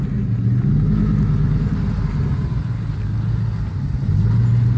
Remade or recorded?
recorded